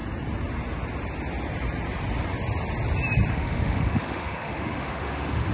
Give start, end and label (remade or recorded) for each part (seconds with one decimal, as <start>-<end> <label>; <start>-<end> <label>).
0.0-3.3 recorded; 3.3-5.5 remade